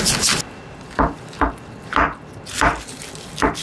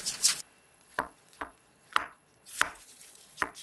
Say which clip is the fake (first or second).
second